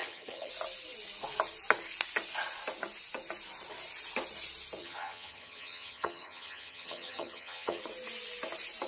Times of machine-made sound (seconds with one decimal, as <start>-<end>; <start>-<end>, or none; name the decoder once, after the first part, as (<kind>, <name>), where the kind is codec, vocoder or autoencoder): 0.0-0.5 (vocoder, HiFi-GAN); 4.8-7.8